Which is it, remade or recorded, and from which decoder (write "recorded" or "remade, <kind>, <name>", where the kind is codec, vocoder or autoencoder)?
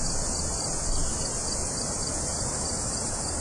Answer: recorded